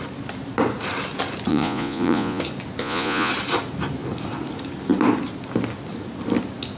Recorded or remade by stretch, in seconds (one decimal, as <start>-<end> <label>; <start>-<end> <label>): 0.0-1.5 recorded; 1.5-2.4 remade; 2.4-2.8 recorded; 2.8-3.3 remade; 3.3-6.8 recorded